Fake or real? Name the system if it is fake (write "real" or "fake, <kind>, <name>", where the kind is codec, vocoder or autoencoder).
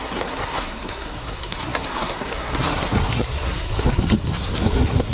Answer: fake, codec, SNAC